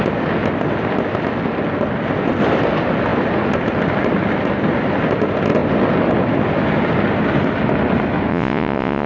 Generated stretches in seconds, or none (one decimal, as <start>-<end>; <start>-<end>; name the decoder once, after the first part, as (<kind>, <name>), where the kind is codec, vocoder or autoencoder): 8.3-9.1 (vocoder, Vocos)